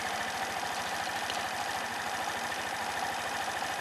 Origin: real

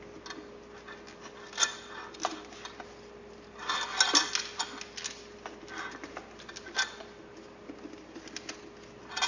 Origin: real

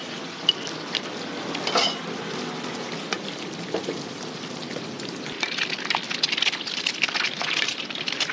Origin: fake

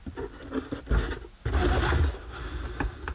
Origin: real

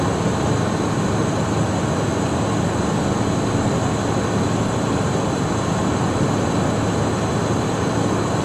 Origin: real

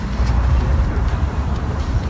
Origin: fake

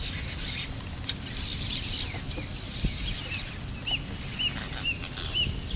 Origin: real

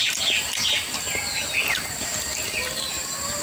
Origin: real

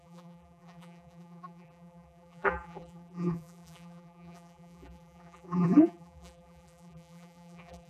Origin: fake